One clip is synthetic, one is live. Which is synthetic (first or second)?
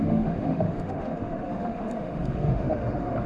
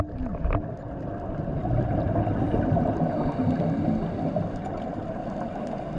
first